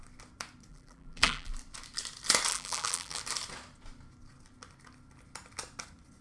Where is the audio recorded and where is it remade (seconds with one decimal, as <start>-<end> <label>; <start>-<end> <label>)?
0.0-0.7 recorded; 0.7-1.5 remade; 1.5-2.5 recorded; 2.5-3.2 remade; 3.2-6.2 recorded